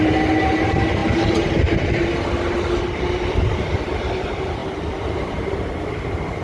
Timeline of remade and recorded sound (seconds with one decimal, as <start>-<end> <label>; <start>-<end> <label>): 0.0-1.0 recorded; 1.0-2.0 remade; 2.0-4.6 recorded; 4.6-5.9 remade; 5.9-6.4 recorded